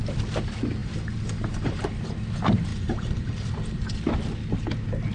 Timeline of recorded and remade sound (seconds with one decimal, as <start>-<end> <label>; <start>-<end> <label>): 0.0-0.8 recorded; 0.8-1.9 remade; 1.9-2.7 recorded; 2.7-3.5 remade; 3.5-5.1 recorded